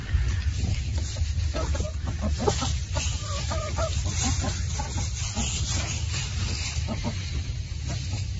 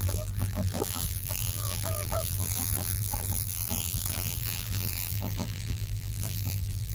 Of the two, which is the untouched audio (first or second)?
first